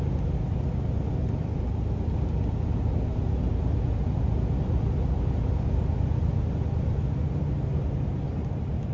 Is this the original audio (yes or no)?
yes